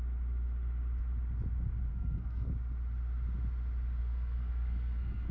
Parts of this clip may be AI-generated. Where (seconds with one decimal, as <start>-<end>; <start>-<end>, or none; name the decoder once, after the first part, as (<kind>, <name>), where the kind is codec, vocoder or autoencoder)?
1.9-2.5 (codec, SNAC); 4.0-5.3